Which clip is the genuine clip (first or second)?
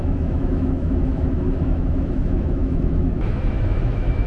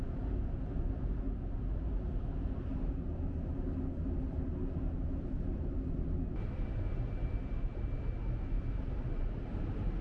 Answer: second